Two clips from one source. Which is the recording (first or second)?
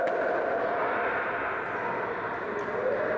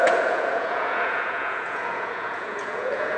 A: first